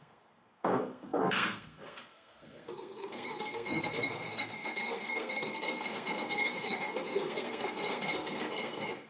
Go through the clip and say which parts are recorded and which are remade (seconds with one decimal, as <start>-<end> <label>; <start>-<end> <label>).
0.0-9.1 remade